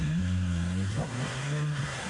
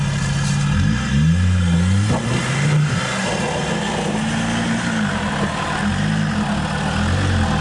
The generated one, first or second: first